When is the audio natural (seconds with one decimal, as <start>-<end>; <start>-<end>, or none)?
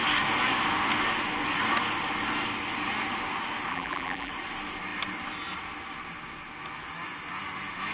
0.0-3.7; 4.3-7.9